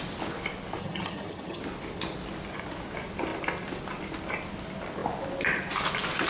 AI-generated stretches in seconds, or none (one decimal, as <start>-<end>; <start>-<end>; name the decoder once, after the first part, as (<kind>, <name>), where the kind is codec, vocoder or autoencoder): 0.8-1.6 (vocoder, HiFi-GAN)